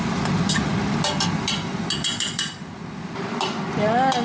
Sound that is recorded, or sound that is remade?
recorded